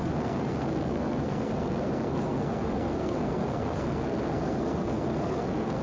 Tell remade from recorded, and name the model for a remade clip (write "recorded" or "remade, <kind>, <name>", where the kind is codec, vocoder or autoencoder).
remade, codec, SNAC